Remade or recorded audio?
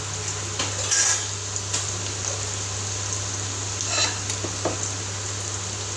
recorded